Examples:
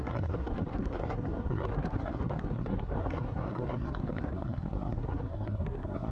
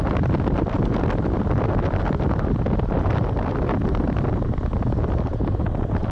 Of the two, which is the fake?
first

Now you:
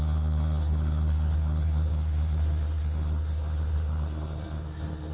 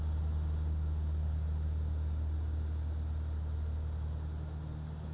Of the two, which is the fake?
first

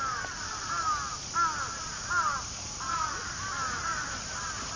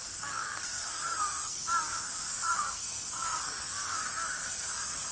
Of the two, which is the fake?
second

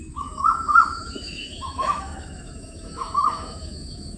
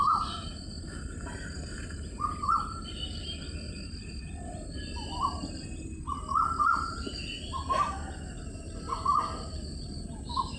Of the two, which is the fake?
first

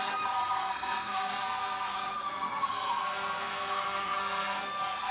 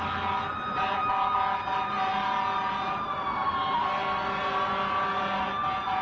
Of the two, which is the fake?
first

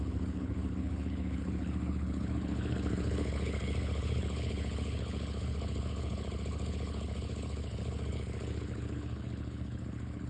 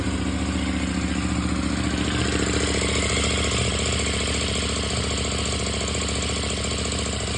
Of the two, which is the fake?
first